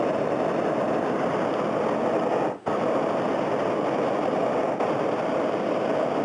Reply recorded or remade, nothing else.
recorded